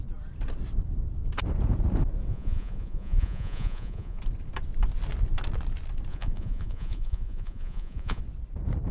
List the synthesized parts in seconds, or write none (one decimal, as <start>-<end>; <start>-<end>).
2.3-4.2; 6.1-8.2